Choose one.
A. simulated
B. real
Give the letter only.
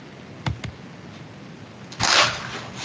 B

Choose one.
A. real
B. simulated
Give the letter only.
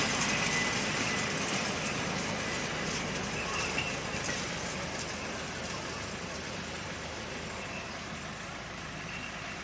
A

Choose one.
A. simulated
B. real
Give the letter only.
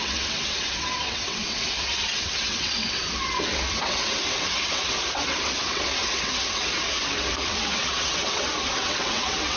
A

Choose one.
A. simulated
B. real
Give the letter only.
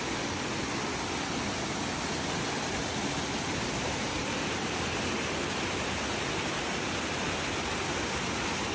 B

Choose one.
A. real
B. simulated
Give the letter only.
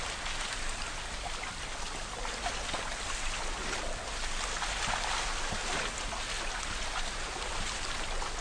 A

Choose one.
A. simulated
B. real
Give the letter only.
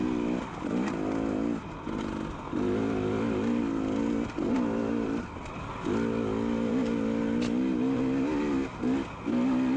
B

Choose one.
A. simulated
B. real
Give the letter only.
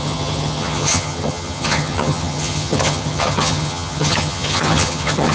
A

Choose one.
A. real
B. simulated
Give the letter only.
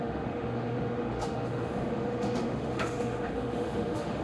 B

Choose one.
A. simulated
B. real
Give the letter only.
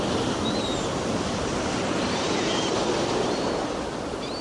B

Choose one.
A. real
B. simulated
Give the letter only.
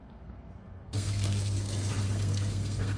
B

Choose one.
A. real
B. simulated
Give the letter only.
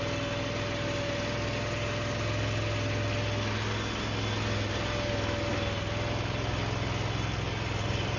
A